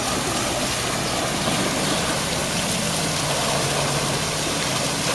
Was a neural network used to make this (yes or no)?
no